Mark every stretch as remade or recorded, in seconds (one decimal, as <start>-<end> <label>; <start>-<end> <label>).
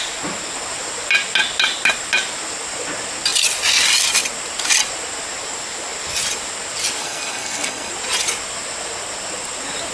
0.0-7.0 recorded; 7.0-7.9 remade; 7.9-9.9 recorded